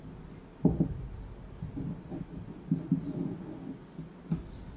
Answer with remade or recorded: recorded